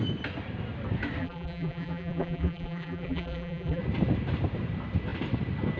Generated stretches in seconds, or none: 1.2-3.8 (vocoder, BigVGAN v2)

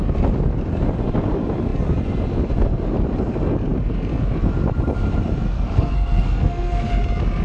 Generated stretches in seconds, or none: 5.5-6.9 (codec, SNAC)

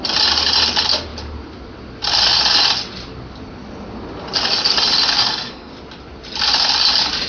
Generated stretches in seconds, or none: 5.1-5.7 (codec, SNAC)

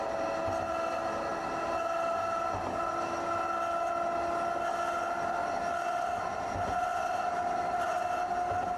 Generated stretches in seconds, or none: none

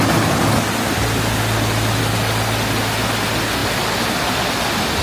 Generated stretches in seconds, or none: none

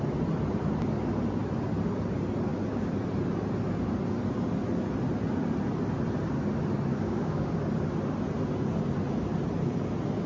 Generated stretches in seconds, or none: 6.9-7.5 (codec, DAC)

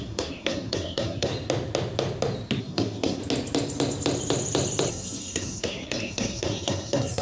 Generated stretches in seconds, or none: 0.0-1.3 (codec, SNAC); 2.6-3.2; 4.9-7.2